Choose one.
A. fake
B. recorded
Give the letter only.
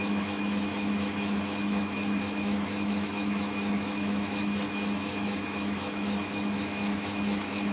A